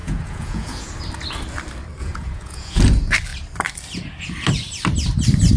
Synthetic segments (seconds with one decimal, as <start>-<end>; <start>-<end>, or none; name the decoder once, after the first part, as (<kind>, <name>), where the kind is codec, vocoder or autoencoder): 0.0-0.9 (vocoder, Vocos); 2.0-2.8